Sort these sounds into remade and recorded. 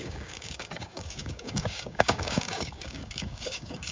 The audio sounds remade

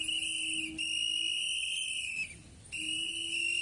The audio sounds recorded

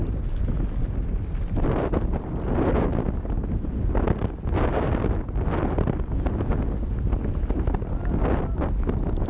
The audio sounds recorded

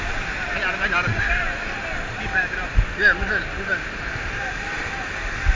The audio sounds recorded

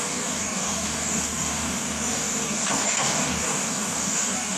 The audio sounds remade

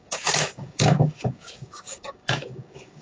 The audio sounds remade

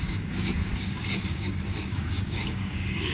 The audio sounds remade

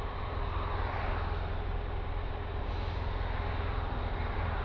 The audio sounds recorded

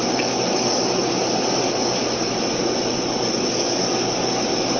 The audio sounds recorded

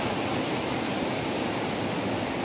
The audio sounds recorded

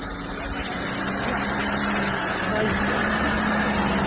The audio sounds recorded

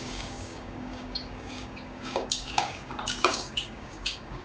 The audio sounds remade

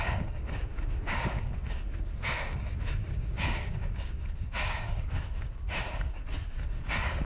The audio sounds remade